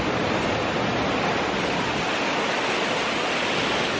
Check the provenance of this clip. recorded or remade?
recorded